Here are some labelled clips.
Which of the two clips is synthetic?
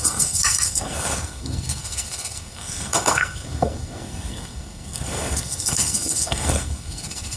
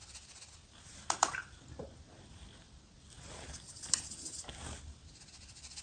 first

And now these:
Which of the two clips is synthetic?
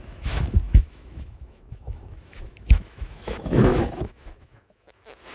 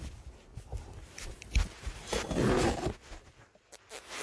first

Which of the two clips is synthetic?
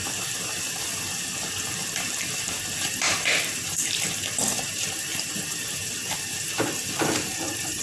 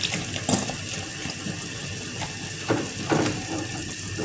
first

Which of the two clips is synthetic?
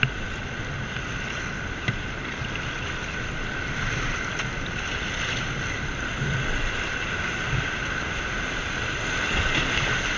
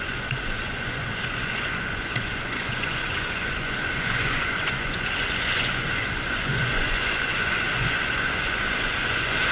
second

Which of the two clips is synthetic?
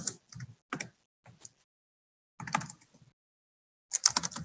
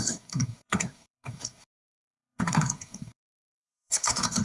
second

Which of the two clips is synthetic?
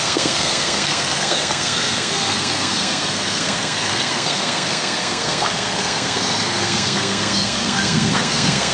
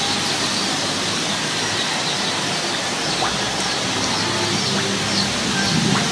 first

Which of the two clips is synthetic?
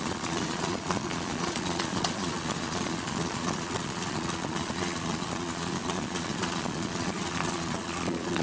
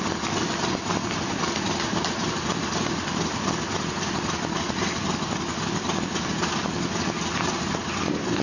first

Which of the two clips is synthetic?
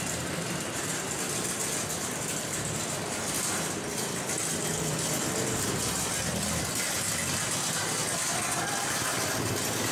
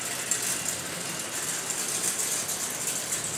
first